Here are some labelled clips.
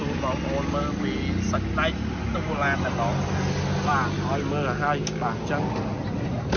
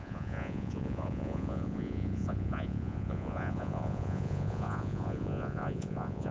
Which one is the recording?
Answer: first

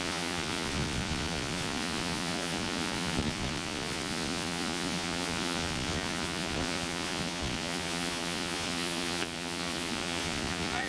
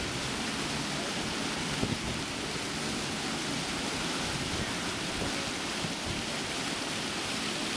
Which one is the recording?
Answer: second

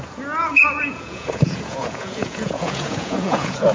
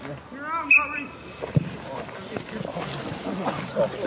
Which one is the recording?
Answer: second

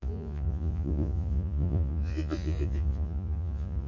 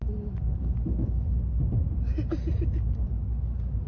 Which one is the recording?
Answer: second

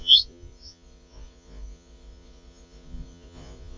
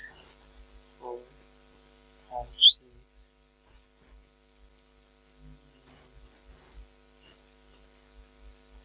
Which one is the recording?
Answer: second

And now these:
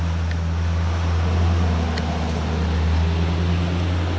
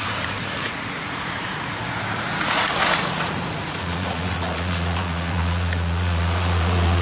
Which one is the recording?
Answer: first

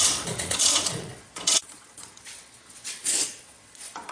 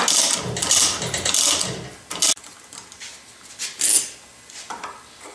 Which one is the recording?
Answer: second